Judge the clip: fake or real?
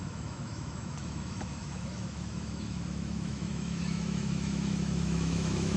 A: fake